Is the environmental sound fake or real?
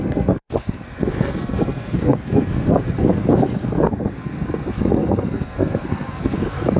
fake